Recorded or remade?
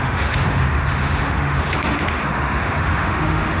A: remade